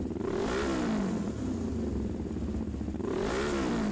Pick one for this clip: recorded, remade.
recorded